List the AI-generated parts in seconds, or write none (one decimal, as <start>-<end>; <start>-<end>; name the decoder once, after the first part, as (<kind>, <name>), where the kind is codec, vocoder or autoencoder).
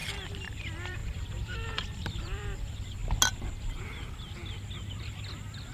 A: 0.0-3.0 (vocoder, BigVGAN v2); 3.8-4.4; 5.0-5.7